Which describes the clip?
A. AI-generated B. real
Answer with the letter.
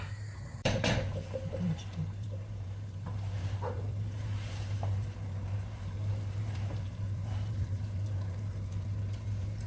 A